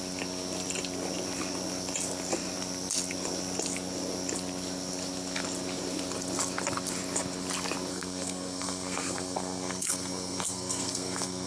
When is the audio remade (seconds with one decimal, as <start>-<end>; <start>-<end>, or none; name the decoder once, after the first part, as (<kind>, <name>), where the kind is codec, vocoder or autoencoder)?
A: 7.9-11.5 (codec, SNAC)